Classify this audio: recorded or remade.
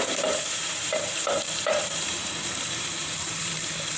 remade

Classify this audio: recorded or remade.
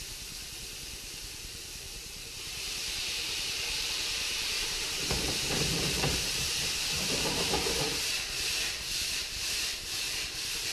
remade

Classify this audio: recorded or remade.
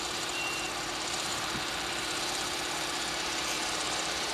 remade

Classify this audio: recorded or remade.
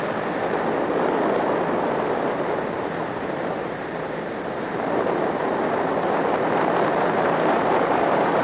remade